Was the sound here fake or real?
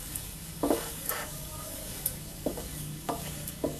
fake